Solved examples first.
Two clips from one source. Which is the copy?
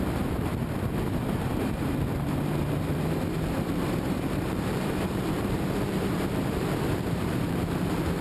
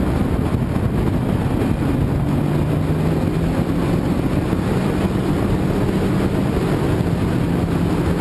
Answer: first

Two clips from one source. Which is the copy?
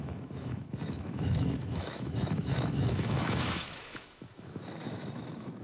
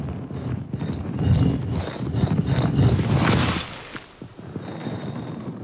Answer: first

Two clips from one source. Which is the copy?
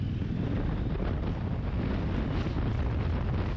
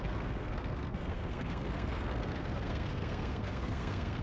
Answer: second